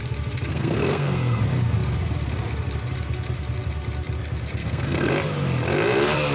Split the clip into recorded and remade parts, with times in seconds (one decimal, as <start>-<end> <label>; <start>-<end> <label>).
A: 0.0-0.5 recorded; 0.5-1.4 remade; 1.4-4.6 recorded; 4.6-5.1 remade; 5.1-6.3 recorded